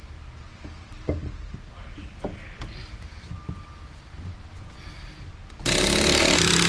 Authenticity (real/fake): real